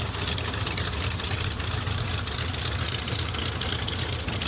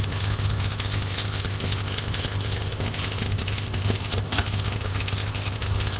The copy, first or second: second